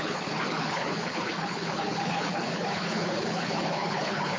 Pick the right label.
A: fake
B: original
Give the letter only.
A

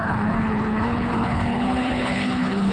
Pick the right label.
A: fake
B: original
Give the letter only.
A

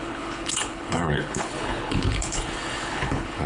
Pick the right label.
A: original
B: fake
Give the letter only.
B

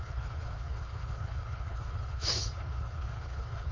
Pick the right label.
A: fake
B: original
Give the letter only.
A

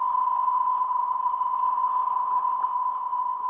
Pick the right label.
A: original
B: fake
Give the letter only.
B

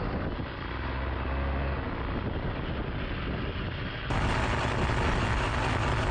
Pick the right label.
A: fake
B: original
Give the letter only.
B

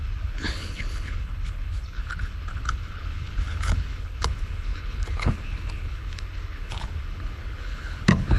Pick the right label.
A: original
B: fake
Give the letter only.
B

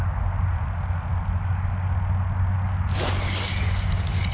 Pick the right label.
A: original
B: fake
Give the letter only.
A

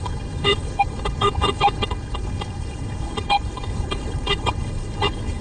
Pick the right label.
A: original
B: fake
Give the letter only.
B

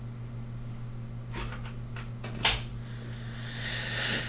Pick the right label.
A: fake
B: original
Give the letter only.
B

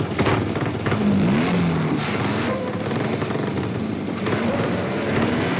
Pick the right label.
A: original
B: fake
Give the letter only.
A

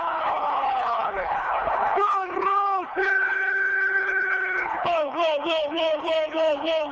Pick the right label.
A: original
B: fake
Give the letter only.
B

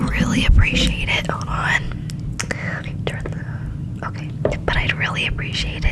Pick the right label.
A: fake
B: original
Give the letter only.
B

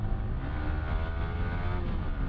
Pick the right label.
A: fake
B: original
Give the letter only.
B